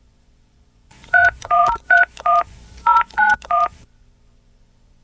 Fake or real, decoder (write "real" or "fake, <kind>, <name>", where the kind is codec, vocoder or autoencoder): fake, vocoder, Vocos